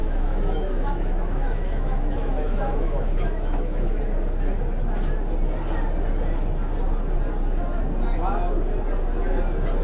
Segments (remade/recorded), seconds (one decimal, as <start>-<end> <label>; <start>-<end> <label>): 0.0-4.0 remade; 4.0-9.8 recorded